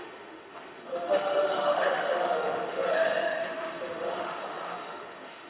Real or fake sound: fake